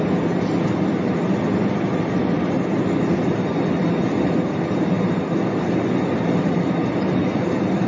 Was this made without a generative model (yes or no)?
yes